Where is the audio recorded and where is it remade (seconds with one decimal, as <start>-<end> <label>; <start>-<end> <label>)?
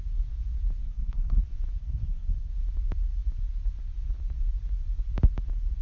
0.0-0.8 recorded; 0.8-1.4 remade; 1.4-1.8 recorded; 1.8-2.5 remade; 2.5-5.8 recorded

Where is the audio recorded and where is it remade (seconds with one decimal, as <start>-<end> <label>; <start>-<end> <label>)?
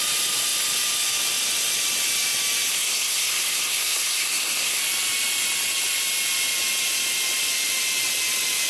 0.0-2.7 recorded; 2.7-4.8 remade; 4.8-8.7 recorded